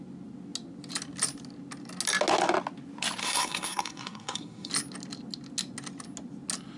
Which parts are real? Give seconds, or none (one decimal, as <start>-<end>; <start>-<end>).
0.0-3.2; 4.7-6.8